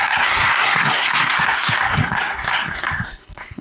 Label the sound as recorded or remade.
remade